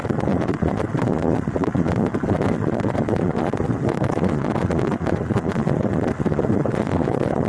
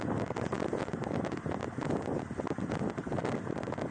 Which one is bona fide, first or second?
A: second